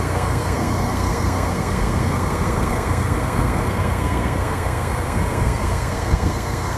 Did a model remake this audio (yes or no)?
yes